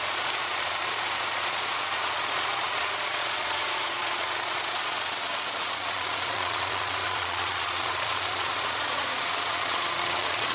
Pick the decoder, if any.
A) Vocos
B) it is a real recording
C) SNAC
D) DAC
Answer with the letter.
A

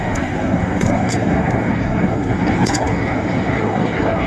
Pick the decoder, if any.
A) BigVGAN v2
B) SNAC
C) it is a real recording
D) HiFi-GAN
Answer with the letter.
B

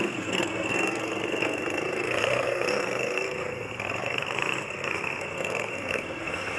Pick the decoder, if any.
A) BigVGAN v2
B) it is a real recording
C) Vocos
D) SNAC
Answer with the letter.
D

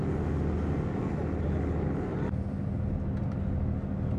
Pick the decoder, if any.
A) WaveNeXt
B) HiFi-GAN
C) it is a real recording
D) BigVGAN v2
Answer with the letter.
C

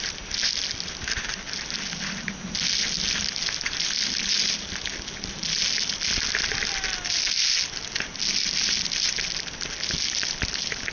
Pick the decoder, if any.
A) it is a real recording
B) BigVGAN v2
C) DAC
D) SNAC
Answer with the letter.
A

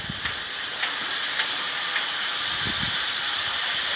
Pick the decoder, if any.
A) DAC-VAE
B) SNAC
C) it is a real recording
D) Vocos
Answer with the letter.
C